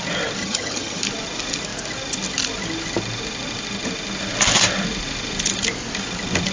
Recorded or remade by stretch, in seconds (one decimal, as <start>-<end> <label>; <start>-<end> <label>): 0.0-0.4 recorded; 0.4-1.0 remade; 1.0-6.5 recorded